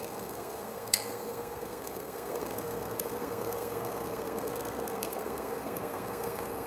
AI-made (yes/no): yes